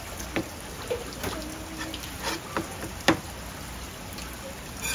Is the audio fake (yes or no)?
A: no